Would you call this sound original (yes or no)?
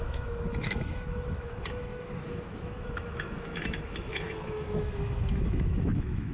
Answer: no